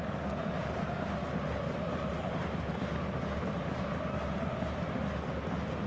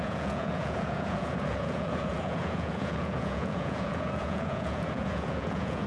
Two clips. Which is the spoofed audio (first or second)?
second